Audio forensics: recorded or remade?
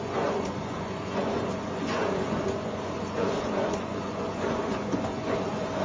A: remade